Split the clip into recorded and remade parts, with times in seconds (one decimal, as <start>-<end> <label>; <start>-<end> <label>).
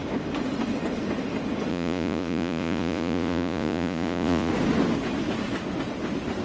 0.0-1.7 recorded; 1.7-4.5 remade; 4.5-6.4 recorded